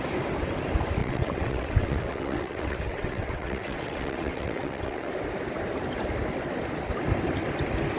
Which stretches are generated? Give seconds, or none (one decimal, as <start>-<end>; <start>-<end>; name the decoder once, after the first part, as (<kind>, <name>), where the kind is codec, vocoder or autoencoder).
1.0-5.1 (vocoder, WaveNeXt)